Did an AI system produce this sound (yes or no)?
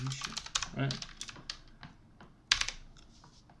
no